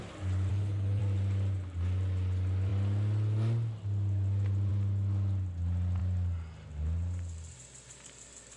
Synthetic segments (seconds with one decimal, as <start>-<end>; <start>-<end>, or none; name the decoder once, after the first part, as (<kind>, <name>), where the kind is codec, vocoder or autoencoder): 0.5-1.0 (codec, HILCodec)